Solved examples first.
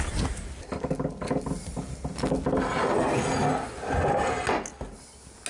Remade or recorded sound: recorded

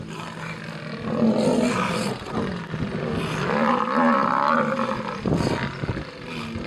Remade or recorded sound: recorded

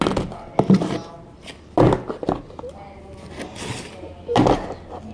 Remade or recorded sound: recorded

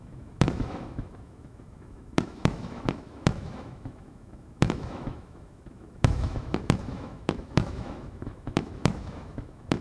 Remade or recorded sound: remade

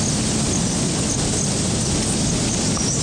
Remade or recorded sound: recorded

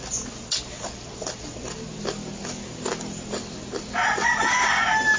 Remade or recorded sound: recorded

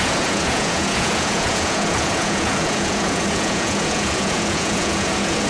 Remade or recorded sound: remade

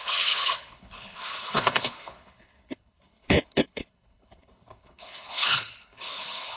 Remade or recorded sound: remade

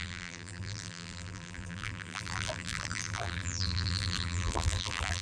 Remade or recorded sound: remade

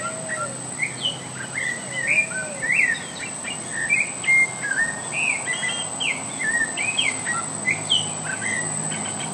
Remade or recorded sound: recorded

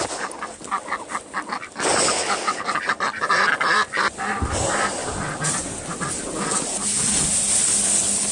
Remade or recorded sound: recorded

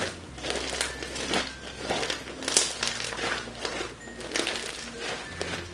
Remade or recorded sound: recorded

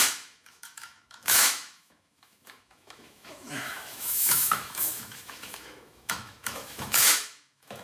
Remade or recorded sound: remade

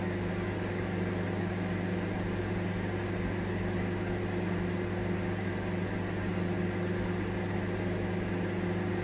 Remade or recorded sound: recorded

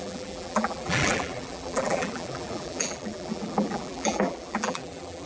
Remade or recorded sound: remade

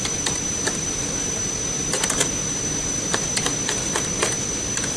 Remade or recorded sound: remade